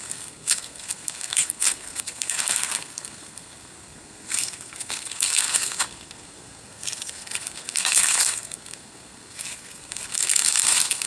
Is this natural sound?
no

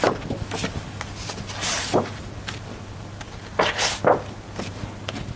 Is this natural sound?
yes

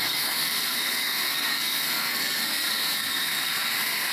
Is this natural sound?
no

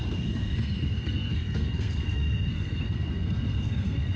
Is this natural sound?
no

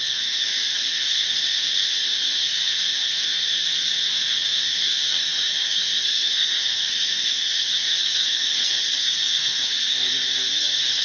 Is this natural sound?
no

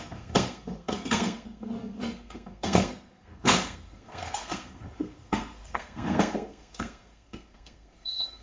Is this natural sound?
no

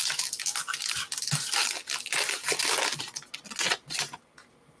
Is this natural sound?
yes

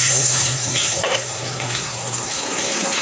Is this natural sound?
no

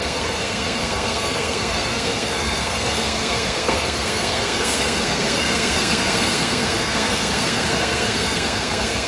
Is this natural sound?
no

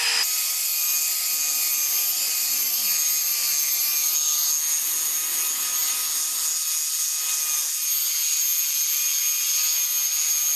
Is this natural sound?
yes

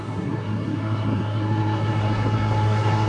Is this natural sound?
no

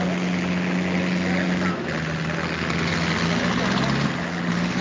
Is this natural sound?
yes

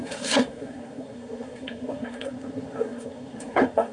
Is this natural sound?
no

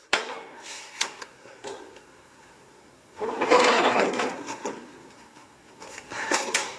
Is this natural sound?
no